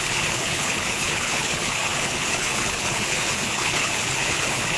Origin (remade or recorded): remade